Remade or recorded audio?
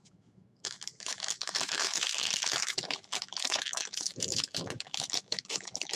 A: remade